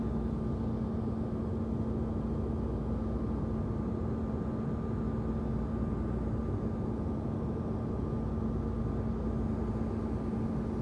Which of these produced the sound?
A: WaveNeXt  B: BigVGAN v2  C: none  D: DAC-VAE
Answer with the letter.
C